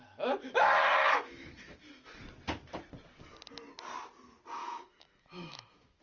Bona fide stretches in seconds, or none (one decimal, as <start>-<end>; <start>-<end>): 0.0-0.5; 2.2-4.6